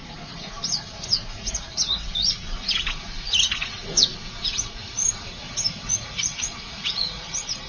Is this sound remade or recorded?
remade